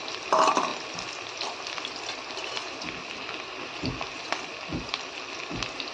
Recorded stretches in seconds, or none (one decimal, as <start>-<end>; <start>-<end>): 0.0-5.9